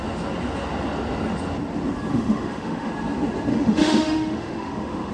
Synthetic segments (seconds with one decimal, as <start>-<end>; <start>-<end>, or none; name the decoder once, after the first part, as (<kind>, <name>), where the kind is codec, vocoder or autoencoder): 2.1-2.9 (autoencoder, DAC-VAE); 3.5-5.1